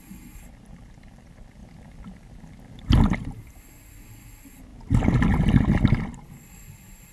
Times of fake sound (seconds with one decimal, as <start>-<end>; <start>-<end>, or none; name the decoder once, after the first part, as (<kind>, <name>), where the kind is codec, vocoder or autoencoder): none